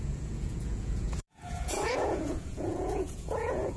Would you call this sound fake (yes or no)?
yes